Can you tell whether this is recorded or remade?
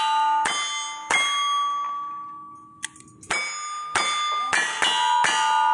recorded